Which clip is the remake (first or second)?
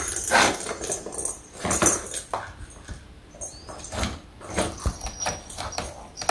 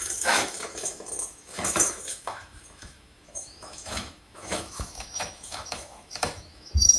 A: second